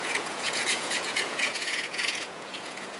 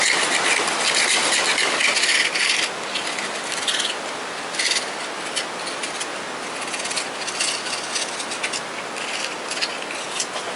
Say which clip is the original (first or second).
second